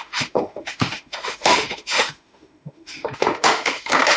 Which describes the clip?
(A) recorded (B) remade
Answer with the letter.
B